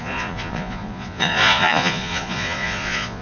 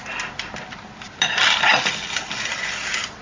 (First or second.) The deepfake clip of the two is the first